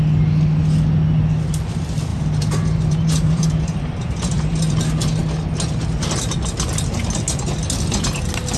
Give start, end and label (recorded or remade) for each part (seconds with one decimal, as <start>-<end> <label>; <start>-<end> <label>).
0.0-2.1 recorded; 2.1-4.8 remade; 4.8-8.6 recorded